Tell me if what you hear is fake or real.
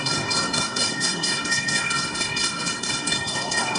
fake